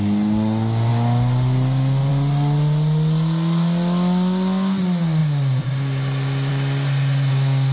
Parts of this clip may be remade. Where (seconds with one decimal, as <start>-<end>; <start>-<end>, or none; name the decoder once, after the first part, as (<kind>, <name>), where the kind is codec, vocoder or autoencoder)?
none